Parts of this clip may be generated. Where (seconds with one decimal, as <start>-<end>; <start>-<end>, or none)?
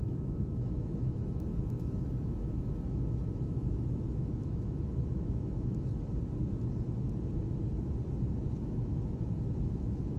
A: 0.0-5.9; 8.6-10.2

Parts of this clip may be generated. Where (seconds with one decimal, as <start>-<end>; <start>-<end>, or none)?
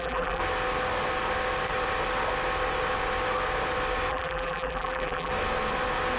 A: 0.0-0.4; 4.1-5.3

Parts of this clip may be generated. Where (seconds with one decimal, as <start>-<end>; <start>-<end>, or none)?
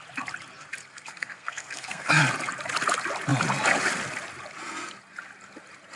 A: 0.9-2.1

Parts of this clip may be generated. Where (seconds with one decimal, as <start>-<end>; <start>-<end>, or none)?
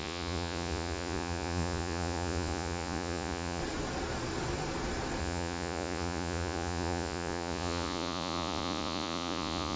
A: 0.0-3.6; 5.2-9.8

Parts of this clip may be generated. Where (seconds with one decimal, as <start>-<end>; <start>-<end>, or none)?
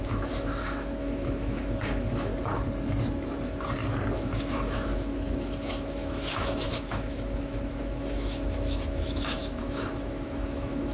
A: 0.0-2.3; 4.1-10.9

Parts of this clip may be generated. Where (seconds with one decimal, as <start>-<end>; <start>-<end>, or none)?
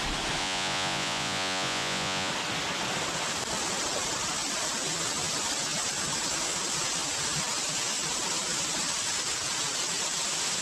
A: 0.4-2.3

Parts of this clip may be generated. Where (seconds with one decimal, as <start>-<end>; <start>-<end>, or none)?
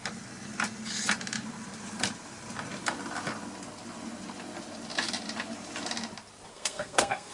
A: 6.5-7.3